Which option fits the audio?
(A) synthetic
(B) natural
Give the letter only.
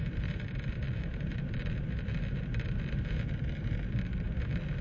A